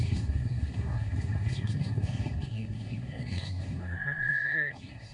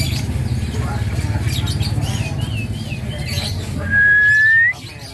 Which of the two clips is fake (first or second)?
first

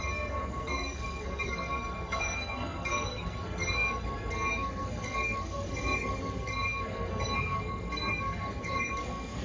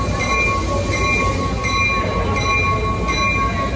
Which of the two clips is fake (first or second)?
first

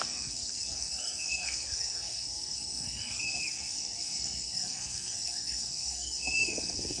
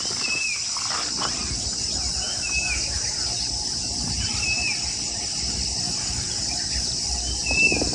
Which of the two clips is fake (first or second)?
first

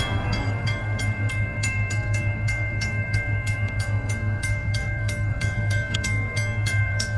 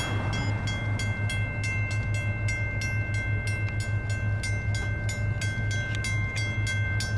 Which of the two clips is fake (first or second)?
first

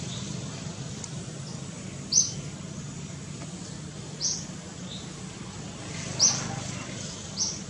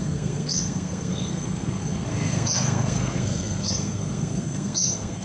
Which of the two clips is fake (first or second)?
second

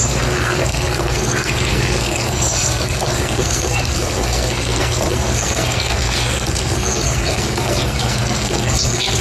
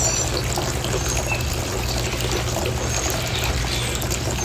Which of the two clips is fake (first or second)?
first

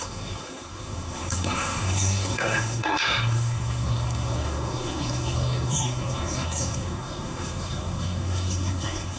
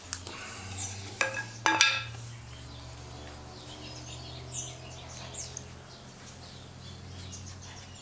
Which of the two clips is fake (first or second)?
first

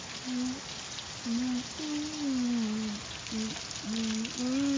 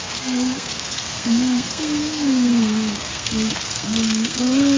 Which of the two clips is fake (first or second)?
second